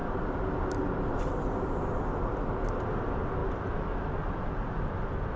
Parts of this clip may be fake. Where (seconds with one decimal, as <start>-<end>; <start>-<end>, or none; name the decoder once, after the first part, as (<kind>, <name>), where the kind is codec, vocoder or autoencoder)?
3.4-4.5 (vocoder, BigVGAN v2)